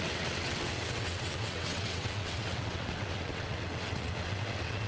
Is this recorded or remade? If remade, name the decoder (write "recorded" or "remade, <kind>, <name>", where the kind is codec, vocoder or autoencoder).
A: remade, vocoder, WaveNeXt